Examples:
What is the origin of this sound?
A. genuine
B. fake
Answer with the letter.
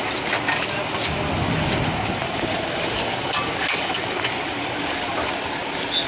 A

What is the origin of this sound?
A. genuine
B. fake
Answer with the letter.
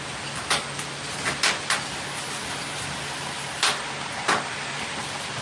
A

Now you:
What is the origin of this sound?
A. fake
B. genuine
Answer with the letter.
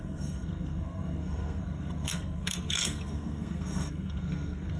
A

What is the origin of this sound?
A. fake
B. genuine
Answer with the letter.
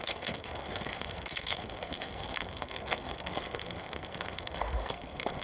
A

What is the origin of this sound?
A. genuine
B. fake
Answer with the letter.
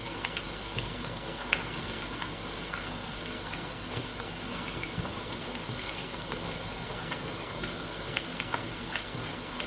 B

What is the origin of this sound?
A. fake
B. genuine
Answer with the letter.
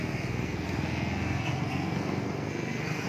A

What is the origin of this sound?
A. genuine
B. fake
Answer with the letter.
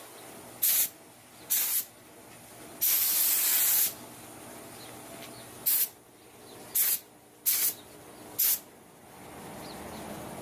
A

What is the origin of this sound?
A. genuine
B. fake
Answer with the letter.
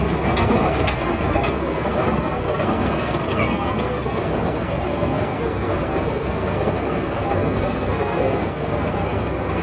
B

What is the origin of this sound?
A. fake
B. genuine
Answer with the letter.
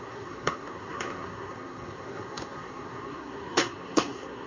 A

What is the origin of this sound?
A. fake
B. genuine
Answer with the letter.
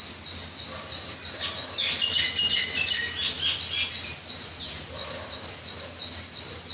B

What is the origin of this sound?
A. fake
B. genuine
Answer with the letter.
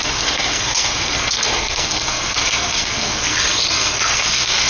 A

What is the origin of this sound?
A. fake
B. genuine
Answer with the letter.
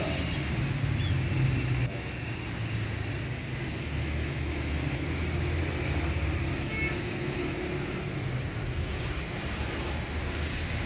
B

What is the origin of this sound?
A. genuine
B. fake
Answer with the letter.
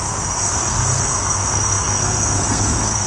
B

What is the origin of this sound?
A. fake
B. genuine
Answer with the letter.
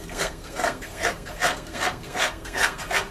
A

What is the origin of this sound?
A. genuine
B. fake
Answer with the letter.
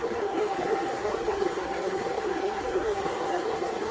B